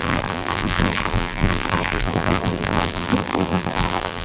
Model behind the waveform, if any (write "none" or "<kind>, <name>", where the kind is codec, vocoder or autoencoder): vocoder, BigVGAN v2